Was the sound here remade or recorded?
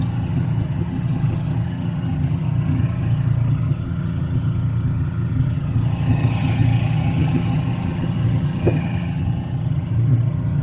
remade